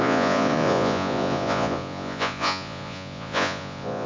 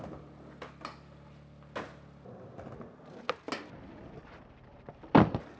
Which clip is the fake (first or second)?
first